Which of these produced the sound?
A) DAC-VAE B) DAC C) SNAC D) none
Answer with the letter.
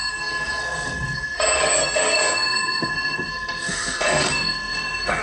C